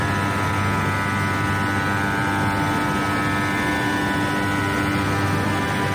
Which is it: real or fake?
real